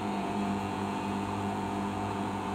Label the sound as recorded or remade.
remade